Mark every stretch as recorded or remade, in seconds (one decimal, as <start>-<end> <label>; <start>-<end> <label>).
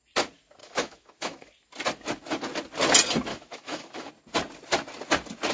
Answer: 0.0-0.6 recorded; 0.6-1.5 remade; 1.5-3.3 recorded; 3.3-4.1 remade; 4.1-5.5 recorded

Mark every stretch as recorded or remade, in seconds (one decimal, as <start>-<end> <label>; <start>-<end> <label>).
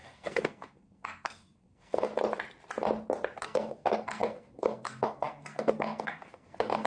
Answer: 0.0-2.1 remade; 2.1-3.4 recorded; 3.4-6.9 remade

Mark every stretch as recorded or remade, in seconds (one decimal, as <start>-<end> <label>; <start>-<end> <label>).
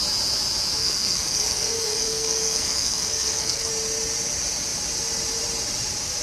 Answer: 0.0-0.8 recorded; 0.8-3.7 remade; 3.7-6.2 recorded